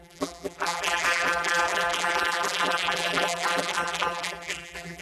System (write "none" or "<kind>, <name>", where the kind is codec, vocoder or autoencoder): vocoder, BigVGAN v2